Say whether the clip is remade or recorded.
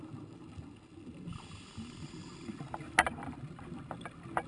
recorded